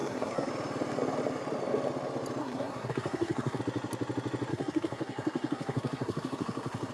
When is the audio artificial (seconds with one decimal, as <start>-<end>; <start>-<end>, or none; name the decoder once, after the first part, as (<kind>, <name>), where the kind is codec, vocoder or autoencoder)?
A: 0.0-0.5 (codec, SNAC); 2.4-3.6; 4.5-6.9